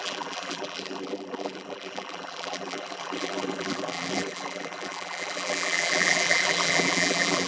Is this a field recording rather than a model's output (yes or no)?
no